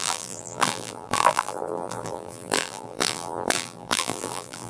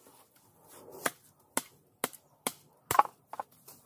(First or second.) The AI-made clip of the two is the first